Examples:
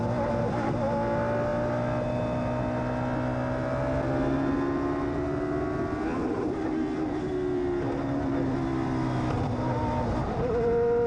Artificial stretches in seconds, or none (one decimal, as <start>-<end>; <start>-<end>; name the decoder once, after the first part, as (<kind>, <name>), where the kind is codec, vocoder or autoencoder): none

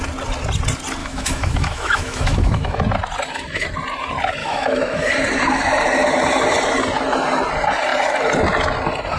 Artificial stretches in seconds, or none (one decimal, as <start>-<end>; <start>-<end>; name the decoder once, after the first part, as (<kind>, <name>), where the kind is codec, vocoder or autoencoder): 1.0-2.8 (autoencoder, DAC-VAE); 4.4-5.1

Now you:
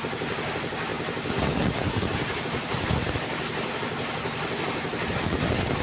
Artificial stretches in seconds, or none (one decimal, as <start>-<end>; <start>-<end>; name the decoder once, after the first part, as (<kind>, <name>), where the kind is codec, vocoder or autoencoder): none

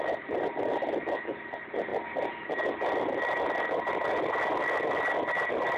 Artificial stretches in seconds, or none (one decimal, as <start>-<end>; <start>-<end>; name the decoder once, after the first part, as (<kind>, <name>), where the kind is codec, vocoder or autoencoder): none